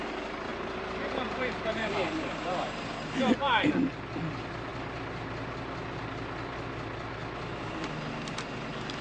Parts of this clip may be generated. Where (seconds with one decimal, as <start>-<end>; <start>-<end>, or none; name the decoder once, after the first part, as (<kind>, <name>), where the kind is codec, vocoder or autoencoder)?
0.5-3.7 (vocoder, BigVGAN v2)